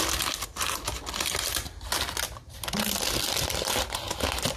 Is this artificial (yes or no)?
no